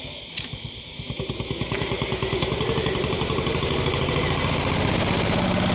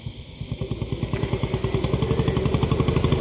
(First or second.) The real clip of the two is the second